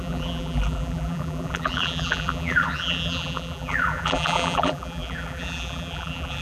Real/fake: fake